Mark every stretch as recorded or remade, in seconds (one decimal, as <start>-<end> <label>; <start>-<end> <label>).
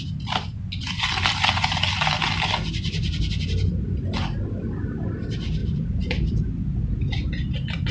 0.0-5.6 recorded; 5.6-6.4 remade; 6.4-7.9 recorded